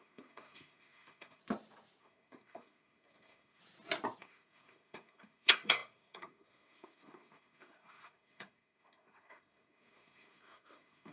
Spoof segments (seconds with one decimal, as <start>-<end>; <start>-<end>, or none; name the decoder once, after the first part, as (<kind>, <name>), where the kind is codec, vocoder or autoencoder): 0.0-1.4 (codec, SNAC); 2.0-3.6; 4.2-11.1